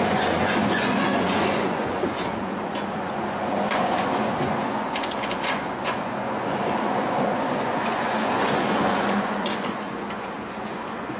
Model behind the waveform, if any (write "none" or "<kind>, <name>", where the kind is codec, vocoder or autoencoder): vocoder, Vocos